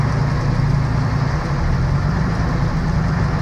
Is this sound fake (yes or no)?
no